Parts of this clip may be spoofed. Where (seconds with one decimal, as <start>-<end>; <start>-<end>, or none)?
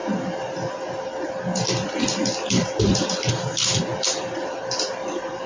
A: none